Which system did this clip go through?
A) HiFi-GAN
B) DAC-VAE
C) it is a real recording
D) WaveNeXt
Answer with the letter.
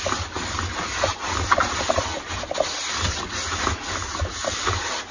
C